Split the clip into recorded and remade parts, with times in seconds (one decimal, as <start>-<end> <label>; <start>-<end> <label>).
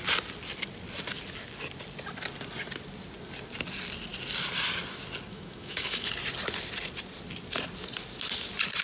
0.0-5.3 recorded; 5.3-6.1 remade; 6.1-8.8 recorded